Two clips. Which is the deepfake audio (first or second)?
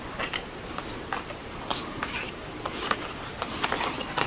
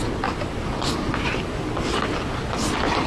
first